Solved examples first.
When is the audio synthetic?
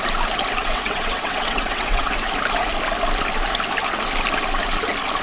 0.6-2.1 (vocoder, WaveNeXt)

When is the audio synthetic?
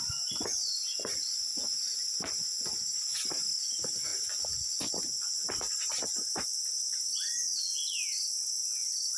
0.6-1.1 (vocoder, Vocos); 1.5-3.0